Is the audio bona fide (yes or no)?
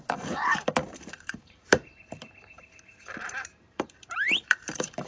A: no